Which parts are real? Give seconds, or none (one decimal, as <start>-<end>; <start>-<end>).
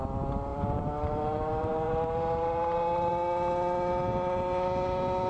0.0-0.5; 3.1-5.3